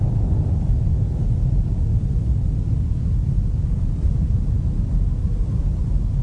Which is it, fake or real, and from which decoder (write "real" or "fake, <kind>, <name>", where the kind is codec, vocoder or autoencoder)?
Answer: real